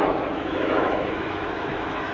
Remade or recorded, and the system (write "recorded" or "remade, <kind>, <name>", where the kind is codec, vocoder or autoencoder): remade, autoencoder, DAC-VAE